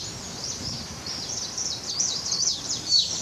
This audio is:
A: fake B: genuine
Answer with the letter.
A